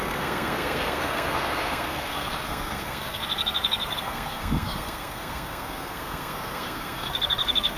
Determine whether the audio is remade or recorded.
remade